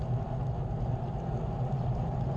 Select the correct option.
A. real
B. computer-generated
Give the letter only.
A